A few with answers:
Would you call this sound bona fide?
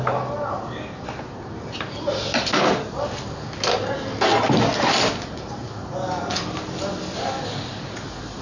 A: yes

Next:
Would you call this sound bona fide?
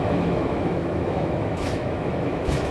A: no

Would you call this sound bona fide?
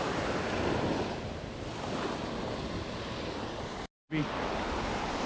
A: yes